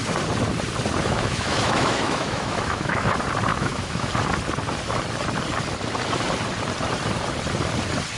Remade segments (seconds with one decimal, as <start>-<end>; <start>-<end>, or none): 1.0-3.1; 3.5-4.1